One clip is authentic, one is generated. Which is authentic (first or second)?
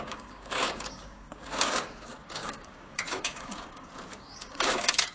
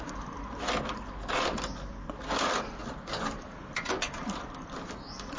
second